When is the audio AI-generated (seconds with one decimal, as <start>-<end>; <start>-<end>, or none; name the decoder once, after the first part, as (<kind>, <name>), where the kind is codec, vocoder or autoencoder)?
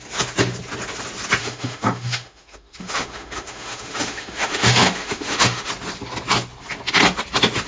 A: 1.4-5.7 (autoencoder, DAC-VAE)